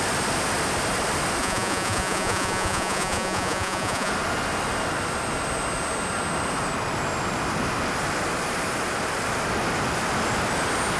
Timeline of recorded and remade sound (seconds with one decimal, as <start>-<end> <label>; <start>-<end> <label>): 0.0-1.4 recorded; 1.4-4.1 remade; 4.1-11.0 recorded